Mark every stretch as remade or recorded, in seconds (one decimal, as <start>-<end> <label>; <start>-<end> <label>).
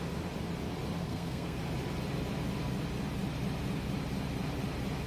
0.0-1.0 recorded; 1.0-1.6 remade; 1.6-5.1 recorded